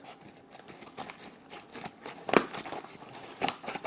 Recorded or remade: recorded